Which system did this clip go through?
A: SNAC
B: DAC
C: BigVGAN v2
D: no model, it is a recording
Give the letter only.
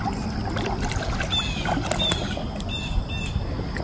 D